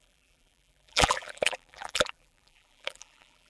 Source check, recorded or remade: remade